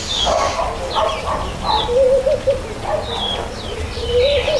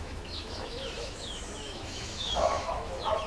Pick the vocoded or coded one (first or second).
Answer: second